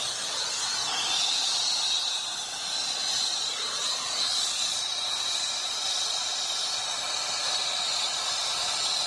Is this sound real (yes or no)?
yes